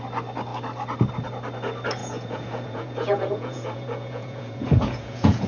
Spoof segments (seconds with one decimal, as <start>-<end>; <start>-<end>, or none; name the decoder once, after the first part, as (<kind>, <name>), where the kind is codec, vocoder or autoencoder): 2.0-5.5 (vocoder, Vocos)

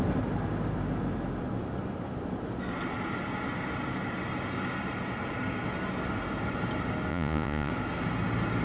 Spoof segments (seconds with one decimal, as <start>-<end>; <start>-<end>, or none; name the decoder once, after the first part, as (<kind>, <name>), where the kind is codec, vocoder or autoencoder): 7.1-7.7 (vocoder, Vocos)

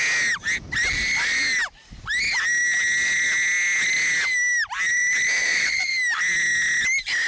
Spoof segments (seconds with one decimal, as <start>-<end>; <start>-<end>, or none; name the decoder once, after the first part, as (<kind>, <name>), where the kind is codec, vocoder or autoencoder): 5.4-5.9 (vocoder, Vocos)

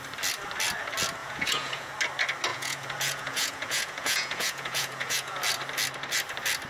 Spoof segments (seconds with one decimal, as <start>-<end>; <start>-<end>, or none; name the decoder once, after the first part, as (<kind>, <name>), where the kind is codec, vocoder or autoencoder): 1.2-1.9 (vocoder, Vocos); 2.5-5.4

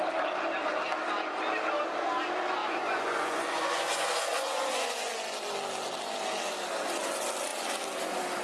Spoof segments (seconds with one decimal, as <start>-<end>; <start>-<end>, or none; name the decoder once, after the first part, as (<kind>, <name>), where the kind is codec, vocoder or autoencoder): 2.6-5.1 (vocoder, Vocos)